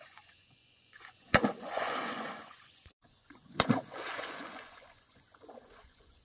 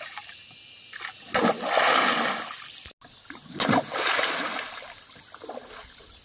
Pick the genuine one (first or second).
second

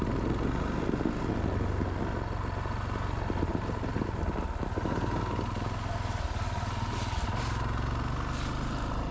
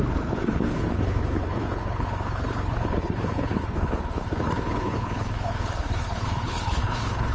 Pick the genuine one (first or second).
first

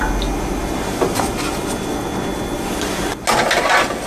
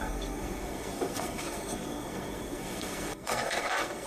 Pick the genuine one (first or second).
first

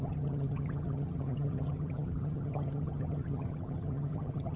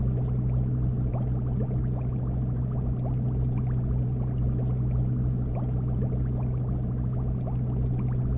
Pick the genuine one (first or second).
second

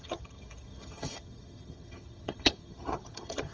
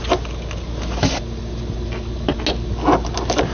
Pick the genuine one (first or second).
second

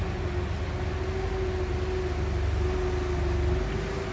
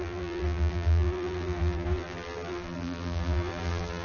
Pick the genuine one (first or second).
first